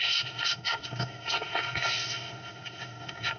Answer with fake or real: fake